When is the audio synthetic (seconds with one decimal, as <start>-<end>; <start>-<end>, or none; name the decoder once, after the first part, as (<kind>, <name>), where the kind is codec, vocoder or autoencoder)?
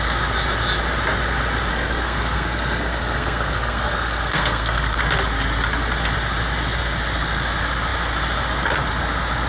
1.7-5.0 (codec, SNAC)